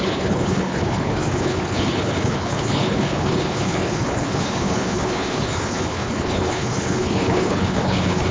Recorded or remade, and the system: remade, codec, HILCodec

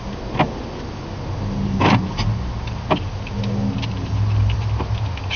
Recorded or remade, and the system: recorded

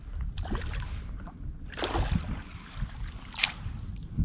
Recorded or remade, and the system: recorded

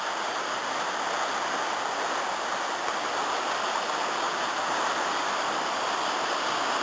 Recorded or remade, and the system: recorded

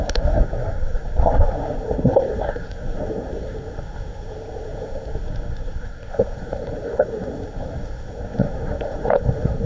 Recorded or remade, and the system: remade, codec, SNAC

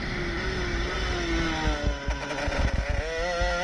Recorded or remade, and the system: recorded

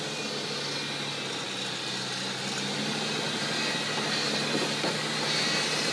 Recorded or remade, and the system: recorded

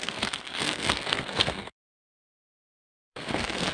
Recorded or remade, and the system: remade, codec, SNAC